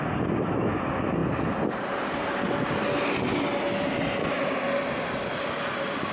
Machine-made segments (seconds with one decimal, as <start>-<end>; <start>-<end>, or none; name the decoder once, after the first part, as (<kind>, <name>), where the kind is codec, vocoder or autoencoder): none